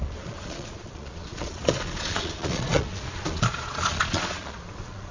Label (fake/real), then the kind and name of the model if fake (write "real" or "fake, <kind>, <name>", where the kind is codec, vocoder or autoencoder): fake, vocoder, Vocos